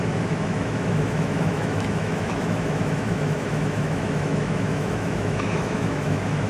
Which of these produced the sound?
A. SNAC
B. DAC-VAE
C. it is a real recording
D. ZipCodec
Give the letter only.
B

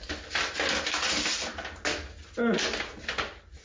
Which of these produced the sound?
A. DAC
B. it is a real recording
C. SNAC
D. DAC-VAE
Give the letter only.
B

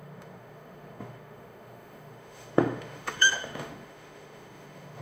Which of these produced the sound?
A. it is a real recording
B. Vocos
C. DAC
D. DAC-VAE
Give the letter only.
D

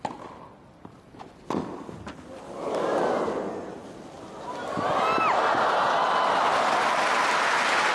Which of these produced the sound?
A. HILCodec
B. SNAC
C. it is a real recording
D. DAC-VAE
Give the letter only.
C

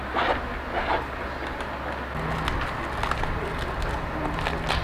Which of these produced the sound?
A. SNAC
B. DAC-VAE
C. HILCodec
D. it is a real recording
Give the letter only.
D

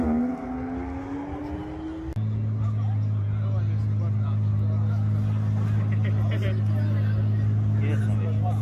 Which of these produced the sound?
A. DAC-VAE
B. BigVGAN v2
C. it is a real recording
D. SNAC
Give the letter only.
C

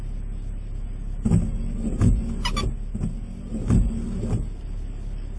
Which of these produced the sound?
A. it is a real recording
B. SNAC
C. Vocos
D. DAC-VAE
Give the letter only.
A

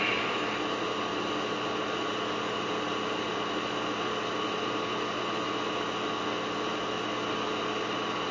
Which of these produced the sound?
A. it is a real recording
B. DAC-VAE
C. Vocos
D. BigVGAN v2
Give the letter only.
A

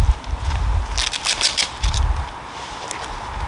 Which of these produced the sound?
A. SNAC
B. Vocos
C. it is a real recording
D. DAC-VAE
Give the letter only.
C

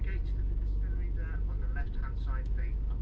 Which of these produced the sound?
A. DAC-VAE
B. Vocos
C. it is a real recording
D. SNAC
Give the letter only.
C